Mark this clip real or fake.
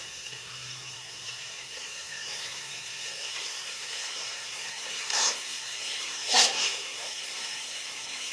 fake